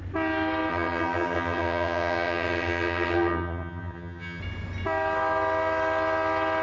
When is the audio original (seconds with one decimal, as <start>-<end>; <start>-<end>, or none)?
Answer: 0.0-0.7; 4.4-6.6

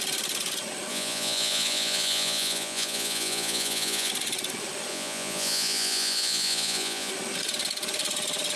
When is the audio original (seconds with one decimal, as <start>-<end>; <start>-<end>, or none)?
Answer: 0.0-0.9; 4.1-4.9; 7.1-8.6

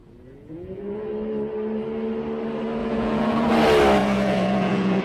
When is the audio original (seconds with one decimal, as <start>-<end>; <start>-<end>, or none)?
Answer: 1.1-2.8; 3.5-4.0

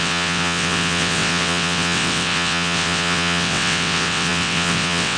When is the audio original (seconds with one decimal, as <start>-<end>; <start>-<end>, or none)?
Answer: none

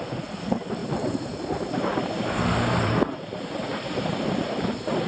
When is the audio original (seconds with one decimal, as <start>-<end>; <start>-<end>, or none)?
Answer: 0.0-0.8; 3.9-5.1

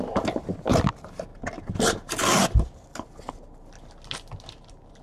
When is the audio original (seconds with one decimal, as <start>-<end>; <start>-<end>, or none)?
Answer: 0.0-5.0

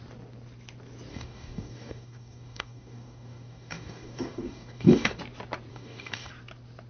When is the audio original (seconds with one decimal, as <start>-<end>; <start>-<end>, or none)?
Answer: 0.0-1.1; 5.2-5.7; 6.3-6.9